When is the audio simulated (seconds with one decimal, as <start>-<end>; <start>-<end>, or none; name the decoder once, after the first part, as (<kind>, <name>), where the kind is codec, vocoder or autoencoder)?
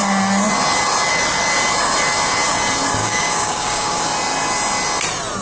3.0-4.0 (codec, DAC)